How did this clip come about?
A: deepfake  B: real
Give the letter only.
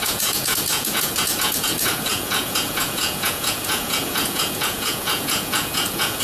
A